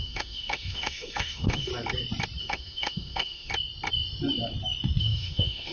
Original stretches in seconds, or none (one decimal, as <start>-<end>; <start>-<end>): 1.7-2.4; 3.5-5.0